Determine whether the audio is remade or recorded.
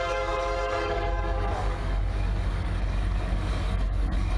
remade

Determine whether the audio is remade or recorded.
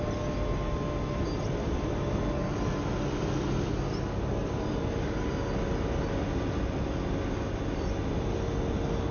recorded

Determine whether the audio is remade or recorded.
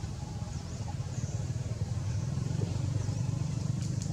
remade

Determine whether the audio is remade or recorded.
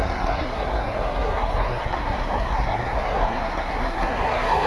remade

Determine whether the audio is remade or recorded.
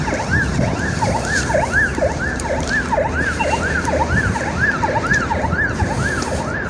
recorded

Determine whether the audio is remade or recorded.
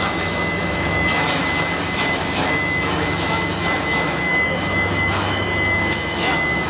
remade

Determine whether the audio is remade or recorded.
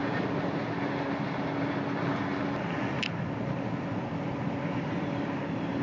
recorded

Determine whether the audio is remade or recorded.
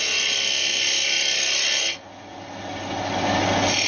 recorded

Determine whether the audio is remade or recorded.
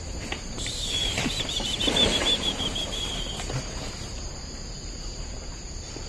remade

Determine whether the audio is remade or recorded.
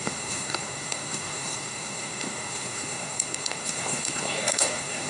remade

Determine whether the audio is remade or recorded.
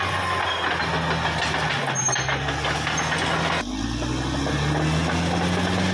recorded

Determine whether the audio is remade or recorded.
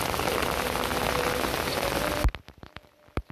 recorded